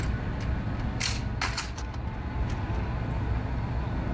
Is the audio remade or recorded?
recorded